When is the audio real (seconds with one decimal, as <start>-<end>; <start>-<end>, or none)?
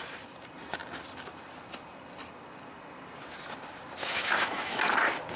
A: 0.0-4.0; 4.8-5.4